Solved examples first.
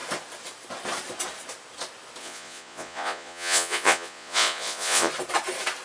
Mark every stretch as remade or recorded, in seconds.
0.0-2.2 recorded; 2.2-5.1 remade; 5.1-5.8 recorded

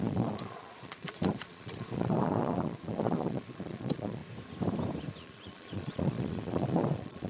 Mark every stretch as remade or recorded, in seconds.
0.0-4.2 remade; 4.2-5.2 recorded; 5.2-7.3 remade